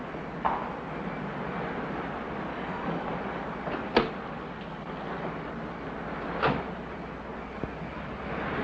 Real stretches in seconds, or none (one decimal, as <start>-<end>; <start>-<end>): 0.0-2.5; 3.0-8.6